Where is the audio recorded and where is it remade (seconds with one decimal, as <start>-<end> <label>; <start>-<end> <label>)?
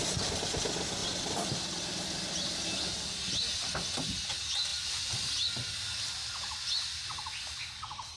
0.0-1.0 recorded; 1.0-1.8 remade; 1.8-4.7 recorded; 4.7-6.1 remade; 6.1-8.2 recorded